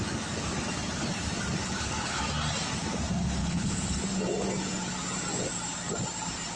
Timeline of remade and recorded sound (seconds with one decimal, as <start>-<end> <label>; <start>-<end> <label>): 0.0-1.6 recorded; 1.6-2.2 remade; 2.2-3.4 recorded; 3.4-4.0 remade; 4.0-6.6 recorded